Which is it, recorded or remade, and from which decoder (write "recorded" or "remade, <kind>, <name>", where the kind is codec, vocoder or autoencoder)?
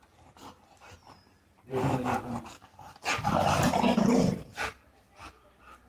remade, vocoder, BigVGAN v2